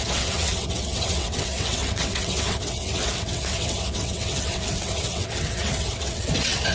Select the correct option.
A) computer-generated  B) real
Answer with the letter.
A